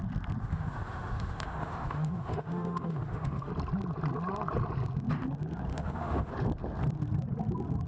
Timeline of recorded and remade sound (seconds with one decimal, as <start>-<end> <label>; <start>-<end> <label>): 0.0-0.4 recorded; 0.4-3.5 remade; 3.5-5.7 recorded; 5.7-6.3 remade; 6.3-7.9 recorded